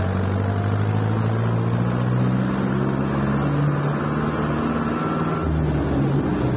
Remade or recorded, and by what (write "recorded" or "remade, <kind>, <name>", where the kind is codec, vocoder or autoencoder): recorded